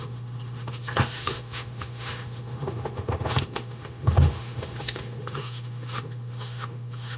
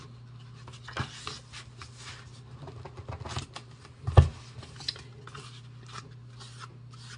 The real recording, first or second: second